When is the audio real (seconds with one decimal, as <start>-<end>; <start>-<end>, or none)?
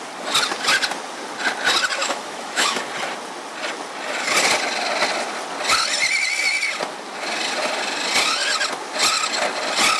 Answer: 0.0-2.0; 2.8-10.0